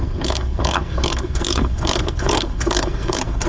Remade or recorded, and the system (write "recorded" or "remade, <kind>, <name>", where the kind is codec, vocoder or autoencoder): remade, codec, SNAC